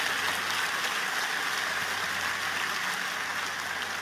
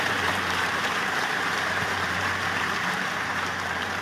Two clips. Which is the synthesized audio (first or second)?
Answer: second